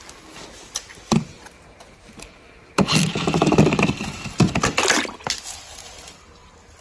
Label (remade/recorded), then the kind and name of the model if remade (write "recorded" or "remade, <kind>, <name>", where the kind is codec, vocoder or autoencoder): recorded